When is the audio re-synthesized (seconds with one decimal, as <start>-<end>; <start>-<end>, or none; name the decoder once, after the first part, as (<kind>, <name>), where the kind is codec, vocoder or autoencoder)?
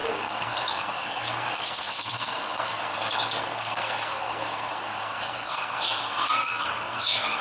0.0-7.4 (codec, SNAC)